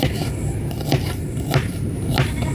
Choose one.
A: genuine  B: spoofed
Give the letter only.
B